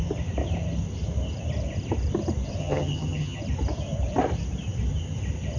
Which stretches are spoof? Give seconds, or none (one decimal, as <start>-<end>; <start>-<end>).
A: 2.6-3.4

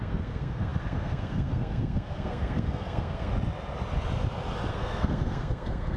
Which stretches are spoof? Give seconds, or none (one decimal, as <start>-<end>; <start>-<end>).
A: 0.0-3.3; 4.7-6.0

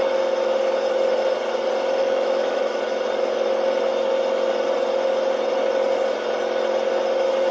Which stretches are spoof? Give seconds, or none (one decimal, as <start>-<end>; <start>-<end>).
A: 2.0-2.8

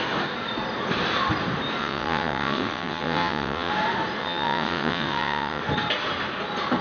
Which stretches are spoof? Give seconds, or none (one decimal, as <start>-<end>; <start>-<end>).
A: 1.8-3.7; 4.2-5.6

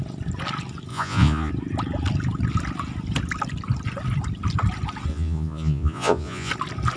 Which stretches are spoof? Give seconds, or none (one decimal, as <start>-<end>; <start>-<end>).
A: 0.9-1.5; 5.1-6.5